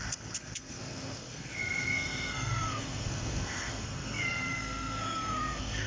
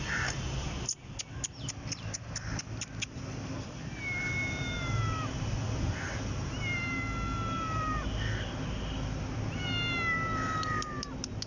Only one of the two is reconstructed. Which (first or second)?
first